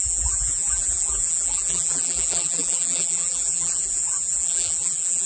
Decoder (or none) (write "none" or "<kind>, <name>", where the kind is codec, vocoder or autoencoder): vocoder, BigVGAN v2